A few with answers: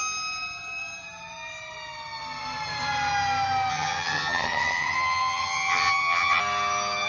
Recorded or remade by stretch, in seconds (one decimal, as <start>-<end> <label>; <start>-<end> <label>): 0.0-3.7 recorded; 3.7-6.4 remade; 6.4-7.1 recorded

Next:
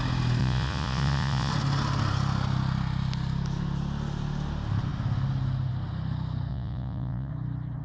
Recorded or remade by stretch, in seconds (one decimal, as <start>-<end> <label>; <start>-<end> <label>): 0.0-0.4 recorded; 0.4-1.5 remade; 1.5-6.5 recorded; 6.5-7.3 remade; 7.3-7.8 recorded

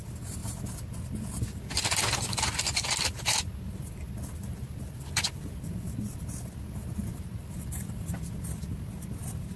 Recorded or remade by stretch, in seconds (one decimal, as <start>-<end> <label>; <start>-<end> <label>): 0.0-4.4 recorded; 4.4-8.1 remade; 8.1-9.6 recorded

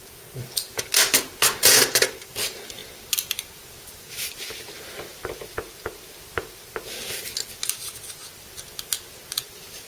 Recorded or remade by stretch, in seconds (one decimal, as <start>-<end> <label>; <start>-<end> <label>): 0.0-9.9 recorded

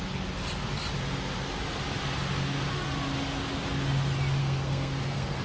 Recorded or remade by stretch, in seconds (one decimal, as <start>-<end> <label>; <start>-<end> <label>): 0.0-4.4 recorded; 4.4-5.4 remade

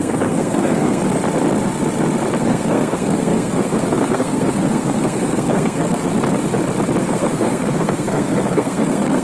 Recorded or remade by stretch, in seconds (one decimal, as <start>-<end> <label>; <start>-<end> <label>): 0.0-1.0 remade; 1.0-2.4 recorded; 2.4-6.1 remade; 6.1-7.0 recorded; 7.0-9.2 remade